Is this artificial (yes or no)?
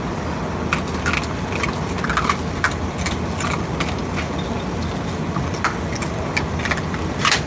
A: no